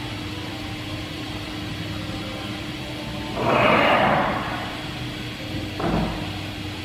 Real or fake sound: real